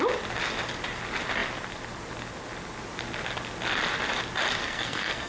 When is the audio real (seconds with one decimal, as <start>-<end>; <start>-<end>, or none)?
0.0-4.6